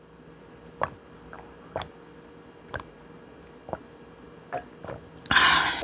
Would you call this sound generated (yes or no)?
no